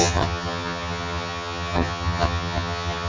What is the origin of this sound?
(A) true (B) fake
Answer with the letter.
B